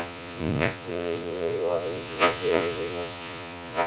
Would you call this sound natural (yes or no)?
no